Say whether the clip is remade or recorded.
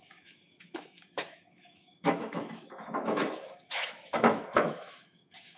remade